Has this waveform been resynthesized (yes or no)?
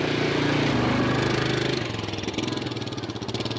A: no